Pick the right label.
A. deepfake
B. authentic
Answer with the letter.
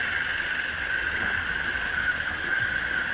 B